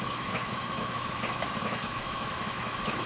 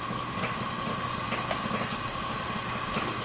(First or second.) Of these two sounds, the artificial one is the first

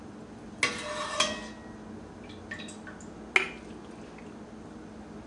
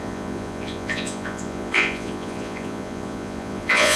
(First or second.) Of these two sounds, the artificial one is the second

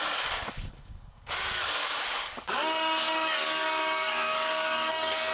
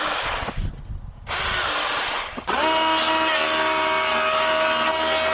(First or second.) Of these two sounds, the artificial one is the first